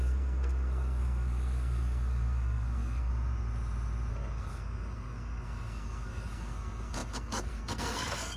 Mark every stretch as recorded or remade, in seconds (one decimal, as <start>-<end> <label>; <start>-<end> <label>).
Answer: 0.0-3.1 remade; 3.1-4.1 recorded; 4.1-8.4 remade